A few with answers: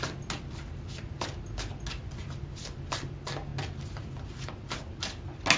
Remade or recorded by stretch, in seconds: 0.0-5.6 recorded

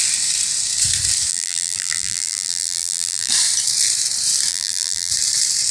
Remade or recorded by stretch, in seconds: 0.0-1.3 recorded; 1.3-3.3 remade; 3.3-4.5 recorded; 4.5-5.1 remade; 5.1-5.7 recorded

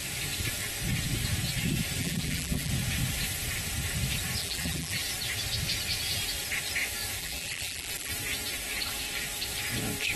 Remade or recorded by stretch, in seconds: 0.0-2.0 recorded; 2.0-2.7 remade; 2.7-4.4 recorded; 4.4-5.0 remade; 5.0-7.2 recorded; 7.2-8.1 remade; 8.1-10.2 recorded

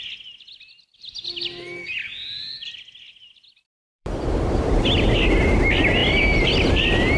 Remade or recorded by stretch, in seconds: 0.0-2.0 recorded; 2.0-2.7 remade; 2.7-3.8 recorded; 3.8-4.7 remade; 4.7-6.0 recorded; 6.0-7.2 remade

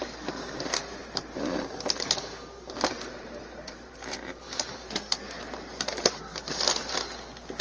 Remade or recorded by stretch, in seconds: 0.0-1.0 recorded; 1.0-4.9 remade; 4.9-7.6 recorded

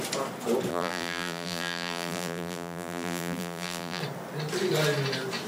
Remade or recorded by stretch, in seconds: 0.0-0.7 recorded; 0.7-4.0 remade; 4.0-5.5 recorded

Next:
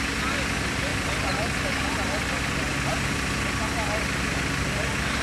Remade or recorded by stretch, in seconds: 0.0-0.9 recorded; 0.9-1.8 remade; 1.8-5.2 recorded